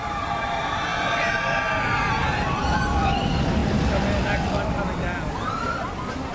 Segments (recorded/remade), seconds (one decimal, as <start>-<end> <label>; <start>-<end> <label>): 0.0-6.3 recorded